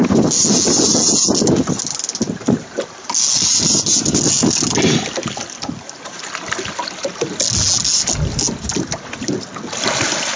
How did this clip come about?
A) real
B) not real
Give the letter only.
A